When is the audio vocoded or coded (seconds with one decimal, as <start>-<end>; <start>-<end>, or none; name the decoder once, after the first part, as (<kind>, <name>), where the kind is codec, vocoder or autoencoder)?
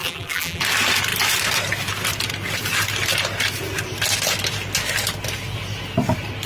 0.0-0.6 (vocoder, BigVGAN v2)